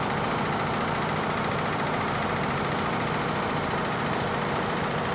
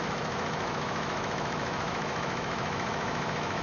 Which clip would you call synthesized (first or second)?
second